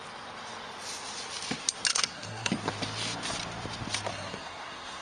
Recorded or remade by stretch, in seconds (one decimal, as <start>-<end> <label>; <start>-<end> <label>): 0.0-1.9 recorded; 1.9-2.5 remade; 2.5-4.1 recorded; 4.1-5.0 remade